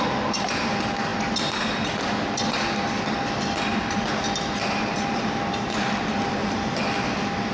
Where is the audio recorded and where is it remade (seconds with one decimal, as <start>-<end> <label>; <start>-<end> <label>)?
0.0-7.5 recorded